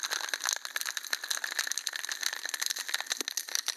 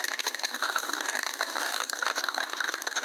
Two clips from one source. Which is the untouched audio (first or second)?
first